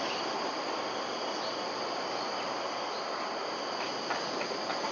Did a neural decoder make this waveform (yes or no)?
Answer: no